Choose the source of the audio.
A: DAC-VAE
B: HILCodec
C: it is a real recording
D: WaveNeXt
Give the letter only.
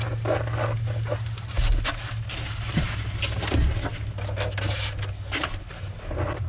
C